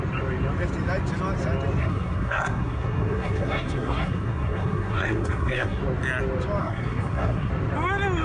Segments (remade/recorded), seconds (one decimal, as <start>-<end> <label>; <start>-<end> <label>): 0.0-1.8 recorded; 1.8-5.8 remade; 5.8-6.6 recorded; 6.6-7.5 remade; 7.5-8.2 recorded

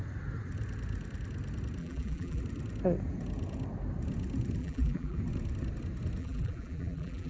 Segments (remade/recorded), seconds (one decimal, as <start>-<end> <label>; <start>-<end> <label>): 0.0-1.8 recorded; 1.8-2.4 remade; 2.4-4.6 recorded; 4.6-5.2 remade; 5.2-6.2 recorded; 6.2-7.3 remade